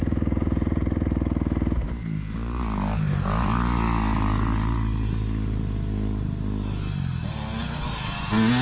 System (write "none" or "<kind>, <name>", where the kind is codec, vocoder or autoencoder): none